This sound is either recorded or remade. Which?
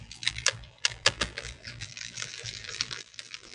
remade